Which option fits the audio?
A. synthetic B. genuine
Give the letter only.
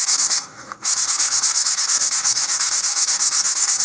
A